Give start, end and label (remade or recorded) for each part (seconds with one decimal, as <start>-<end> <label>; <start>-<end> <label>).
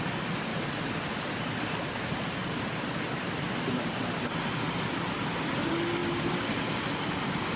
0.0-7.6 recorded